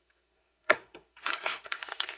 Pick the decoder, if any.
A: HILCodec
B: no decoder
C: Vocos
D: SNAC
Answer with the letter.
D